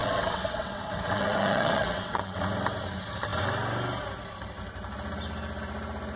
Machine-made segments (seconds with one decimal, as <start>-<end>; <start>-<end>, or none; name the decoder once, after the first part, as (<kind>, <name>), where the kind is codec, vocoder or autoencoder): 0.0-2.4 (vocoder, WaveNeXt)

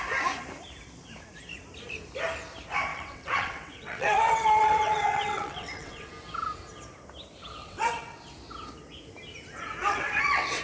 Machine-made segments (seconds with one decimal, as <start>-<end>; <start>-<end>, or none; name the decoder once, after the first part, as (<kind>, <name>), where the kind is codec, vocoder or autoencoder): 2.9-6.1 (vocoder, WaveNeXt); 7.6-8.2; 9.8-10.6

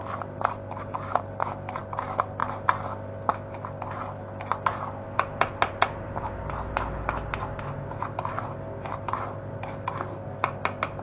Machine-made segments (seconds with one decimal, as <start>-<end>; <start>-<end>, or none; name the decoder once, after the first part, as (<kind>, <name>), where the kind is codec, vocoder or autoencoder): none